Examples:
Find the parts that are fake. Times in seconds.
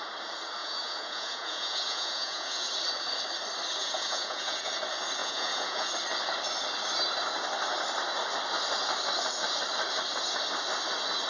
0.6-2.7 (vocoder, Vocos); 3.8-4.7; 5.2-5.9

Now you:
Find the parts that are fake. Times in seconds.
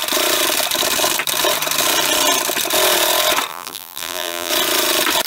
3.5-4.5 (vocoder, BigVGAN v2)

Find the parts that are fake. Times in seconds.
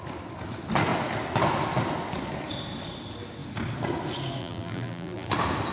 4.4-5.3 (vocoder, BigVGAN v2)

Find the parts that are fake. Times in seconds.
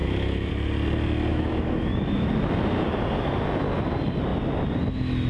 0.0-0.5 (autoencoder, DAC-VAE); 1.3-2.3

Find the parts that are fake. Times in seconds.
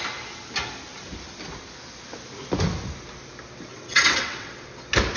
3.7-4.5 (vocoder, WaveNeXt)